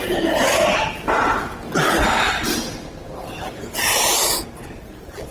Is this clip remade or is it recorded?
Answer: recorded